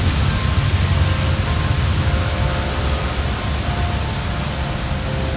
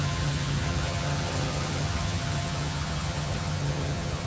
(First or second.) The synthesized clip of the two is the second